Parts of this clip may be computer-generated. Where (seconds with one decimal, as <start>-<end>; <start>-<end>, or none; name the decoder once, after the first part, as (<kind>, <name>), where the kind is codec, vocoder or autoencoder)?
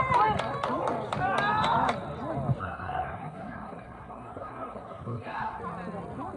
2.6-5.6 (codec, SNAC)